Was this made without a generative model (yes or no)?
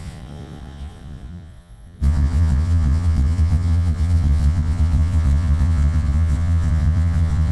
no